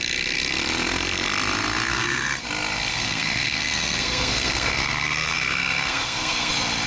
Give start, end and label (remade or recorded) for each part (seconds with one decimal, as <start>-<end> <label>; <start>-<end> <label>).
0.0-1.9 recorded; 1.9-2.4 remade; 2.4-2.9 recorded; 2.9-6.5 remade; 6.5-6.9 recorded